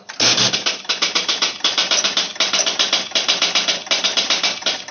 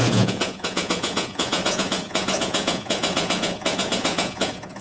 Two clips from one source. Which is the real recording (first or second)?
first